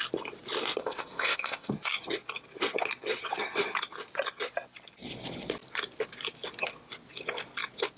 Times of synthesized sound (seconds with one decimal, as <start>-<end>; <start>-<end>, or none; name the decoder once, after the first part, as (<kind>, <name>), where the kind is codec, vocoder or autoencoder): 0.8-1.7 (codec, ZipCodec)